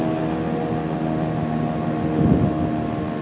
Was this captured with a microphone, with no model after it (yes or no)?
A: yes